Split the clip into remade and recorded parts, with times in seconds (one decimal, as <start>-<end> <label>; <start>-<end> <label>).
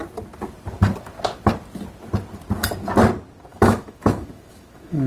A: 0.0-3.5 recorded; 3.5-5.1 remade